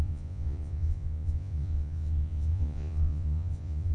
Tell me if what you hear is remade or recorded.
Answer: remade